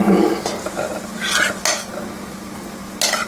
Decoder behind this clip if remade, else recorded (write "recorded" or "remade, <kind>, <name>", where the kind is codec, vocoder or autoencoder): recorded